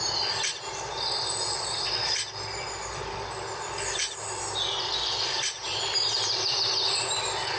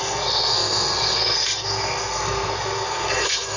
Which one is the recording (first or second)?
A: first